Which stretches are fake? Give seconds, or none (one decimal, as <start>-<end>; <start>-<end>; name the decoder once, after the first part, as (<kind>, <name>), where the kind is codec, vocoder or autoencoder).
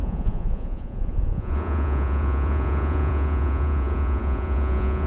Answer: 0.0-5.1 (vocoder, Vocos)